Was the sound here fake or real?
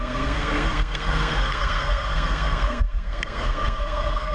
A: fake